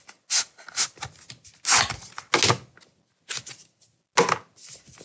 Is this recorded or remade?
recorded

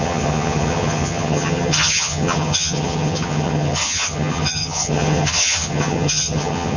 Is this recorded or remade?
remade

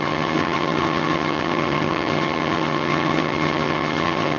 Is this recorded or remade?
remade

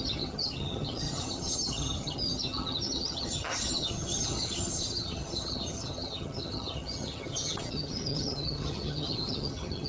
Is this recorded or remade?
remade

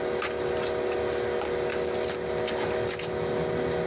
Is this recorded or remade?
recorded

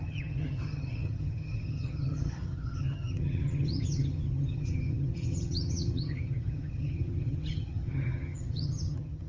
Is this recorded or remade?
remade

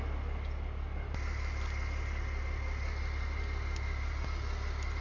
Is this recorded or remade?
recorded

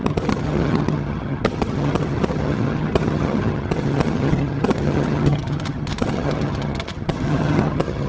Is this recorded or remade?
remade